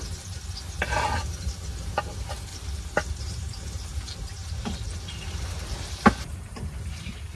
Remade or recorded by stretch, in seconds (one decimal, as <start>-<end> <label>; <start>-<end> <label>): 0.0-2.5 remade; 2.5-3.1 recorded; 3.1-7.4 remade